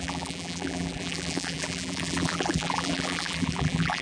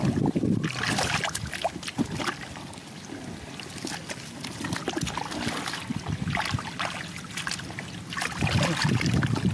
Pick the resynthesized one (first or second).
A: first